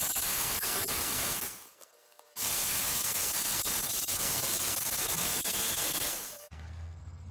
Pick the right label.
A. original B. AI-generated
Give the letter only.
B